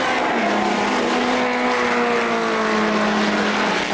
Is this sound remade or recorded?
recorded